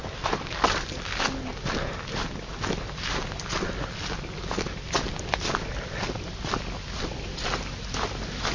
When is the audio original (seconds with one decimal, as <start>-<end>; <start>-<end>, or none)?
0.0-8.5